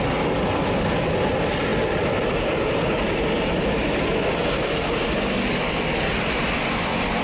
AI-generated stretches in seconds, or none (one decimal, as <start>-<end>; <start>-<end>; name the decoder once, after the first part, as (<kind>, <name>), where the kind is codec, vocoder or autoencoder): none